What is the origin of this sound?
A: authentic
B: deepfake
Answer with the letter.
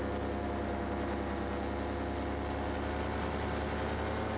A